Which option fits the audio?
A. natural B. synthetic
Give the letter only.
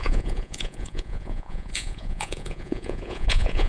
B